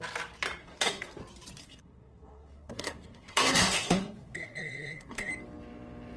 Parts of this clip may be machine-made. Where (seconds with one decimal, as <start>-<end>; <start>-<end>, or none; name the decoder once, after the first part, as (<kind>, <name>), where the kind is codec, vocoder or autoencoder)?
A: 0.6-1.2 (codec, SNAC); 1.6-5.3